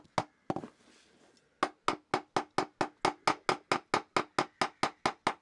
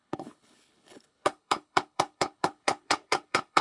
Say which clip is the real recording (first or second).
first